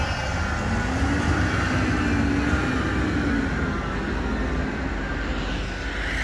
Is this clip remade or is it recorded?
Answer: recorded